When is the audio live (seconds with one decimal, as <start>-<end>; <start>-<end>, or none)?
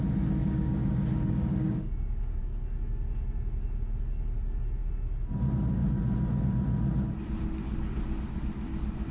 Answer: 0.0-0.4; 2.4-9.1